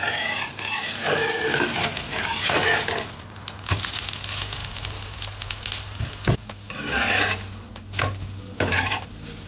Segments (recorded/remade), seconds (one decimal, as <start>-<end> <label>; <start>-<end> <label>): 0.0-9.5 recorded